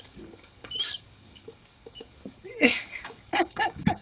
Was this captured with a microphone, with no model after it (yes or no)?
no